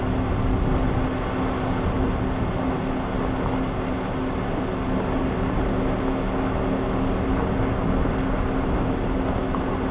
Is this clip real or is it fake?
real